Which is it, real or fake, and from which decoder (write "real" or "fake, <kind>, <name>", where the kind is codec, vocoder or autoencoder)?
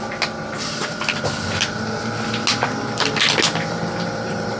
real